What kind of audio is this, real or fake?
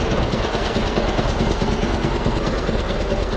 fake